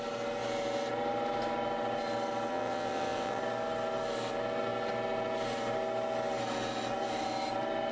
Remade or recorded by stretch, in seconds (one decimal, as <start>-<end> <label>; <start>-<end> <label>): 0.0-2.5 recorded; 2.5-3.4 remade; 3.4-7.9 recorded